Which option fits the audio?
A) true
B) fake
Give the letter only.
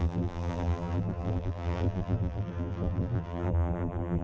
B